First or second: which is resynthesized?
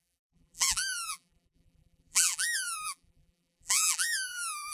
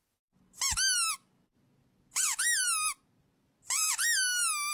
first